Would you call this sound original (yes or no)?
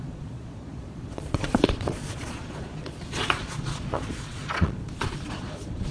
no